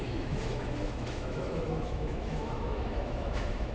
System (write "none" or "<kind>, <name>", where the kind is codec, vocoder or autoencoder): autoencoder, DAC-VAE